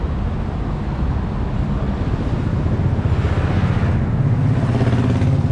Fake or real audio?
real